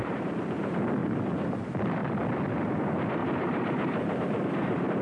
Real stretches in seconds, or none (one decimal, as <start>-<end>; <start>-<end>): none